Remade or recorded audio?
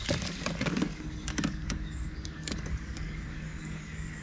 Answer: remade